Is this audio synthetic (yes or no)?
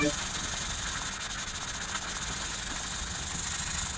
no